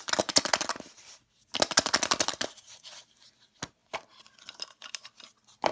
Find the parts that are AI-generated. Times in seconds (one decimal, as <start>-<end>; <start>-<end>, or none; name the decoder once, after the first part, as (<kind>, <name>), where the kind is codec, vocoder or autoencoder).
none